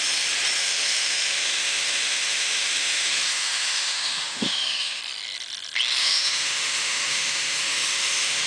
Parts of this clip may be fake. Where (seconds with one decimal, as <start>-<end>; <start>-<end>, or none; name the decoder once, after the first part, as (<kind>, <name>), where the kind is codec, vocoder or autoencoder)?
0.6-5.0 (autoencoder, DAC-VAE); 6.0-8.5